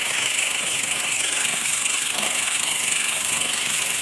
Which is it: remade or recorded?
remade